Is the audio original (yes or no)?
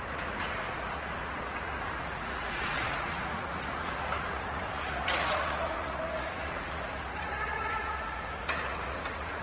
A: no